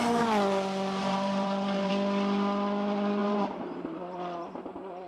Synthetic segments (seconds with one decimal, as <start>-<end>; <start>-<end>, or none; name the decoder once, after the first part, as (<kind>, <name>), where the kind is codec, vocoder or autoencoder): 1.0-1.9 (vocoder, BigVGAN v2); 3.2-3.8